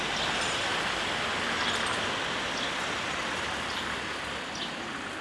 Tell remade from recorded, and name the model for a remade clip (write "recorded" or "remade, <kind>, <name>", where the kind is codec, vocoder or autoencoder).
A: recorded